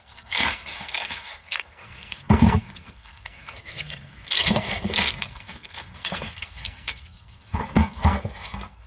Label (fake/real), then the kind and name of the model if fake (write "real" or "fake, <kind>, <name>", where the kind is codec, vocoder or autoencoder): fake, codec, SNAC